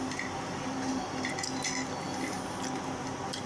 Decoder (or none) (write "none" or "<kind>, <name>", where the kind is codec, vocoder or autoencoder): none